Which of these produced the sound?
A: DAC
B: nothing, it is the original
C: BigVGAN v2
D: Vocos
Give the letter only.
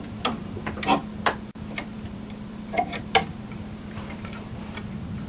C